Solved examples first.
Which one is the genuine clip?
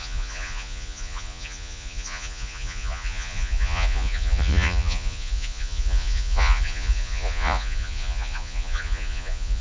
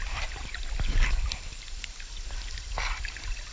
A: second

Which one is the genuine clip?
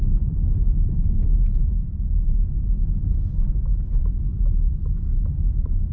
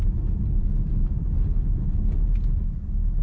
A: second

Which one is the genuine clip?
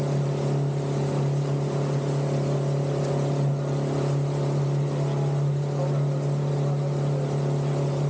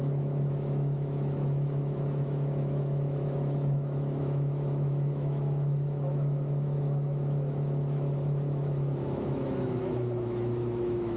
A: first